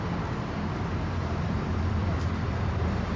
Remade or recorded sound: remade